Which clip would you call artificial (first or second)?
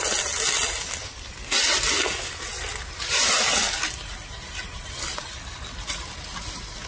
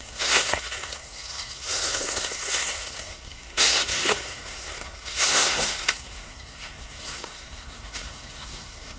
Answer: second